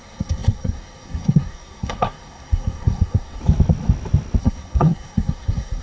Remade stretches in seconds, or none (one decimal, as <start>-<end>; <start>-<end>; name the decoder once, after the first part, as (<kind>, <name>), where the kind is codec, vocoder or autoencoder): 0.0-3.4 (codec, SNAC); 4.4-5.8